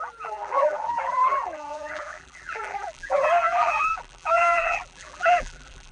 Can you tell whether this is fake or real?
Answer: fake